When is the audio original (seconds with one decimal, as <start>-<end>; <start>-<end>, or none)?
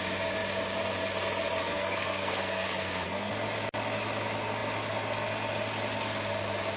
0.0-1.6; 3.3-6.8